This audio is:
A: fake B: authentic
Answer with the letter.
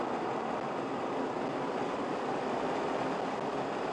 B